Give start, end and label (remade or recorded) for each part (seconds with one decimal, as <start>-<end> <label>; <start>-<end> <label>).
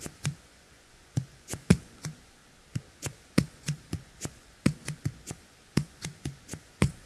0.0-2.4 remade; 2.4-2.9 recorded; 2.9-7.1 remade